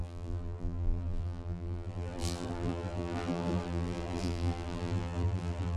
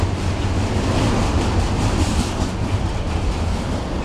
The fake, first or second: first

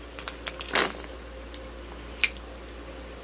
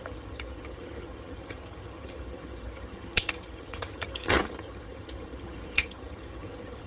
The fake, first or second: second